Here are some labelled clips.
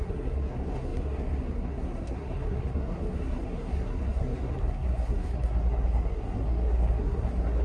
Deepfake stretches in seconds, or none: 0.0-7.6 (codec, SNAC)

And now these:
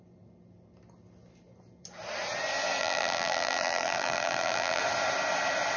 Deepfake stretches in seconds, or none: 2.8-4.8 (vocoder, BigVGAN v2)